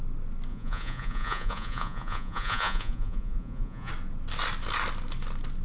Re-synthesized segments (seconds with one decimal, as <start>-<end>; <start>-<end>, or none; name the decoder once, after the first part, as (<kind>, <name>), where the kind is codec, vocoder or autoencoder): 0.5-3.9 (vocoder, Vocos)